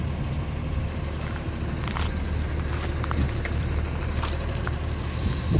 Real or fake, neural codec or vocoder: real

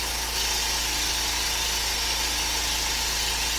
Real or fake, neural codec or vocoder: real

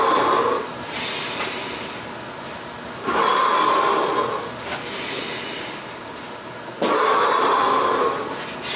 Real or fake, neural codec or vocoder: real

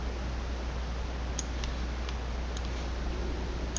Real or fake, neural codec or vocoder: real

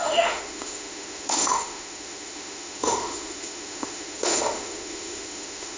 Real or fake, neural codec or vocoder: fake, autoencoder, DAC-VAE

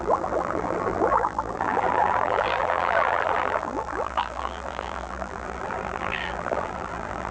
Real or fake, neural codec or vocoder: fake, vocoder, BigVGAN v2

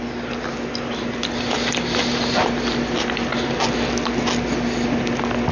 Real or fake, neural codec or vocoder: real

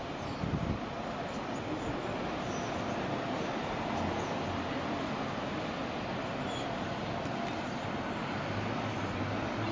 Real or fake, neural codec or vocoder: real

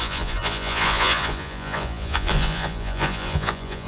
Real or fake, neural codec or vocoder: fake, vocoder, Vocos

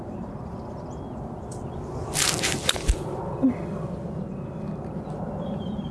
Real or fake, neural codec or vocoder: real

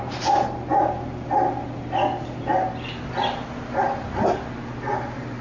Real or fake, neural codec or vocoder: real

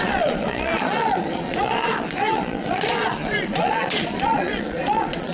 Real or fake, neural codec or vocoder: fake, vocoder, Vocos